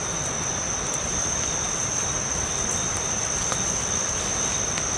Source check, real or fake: fake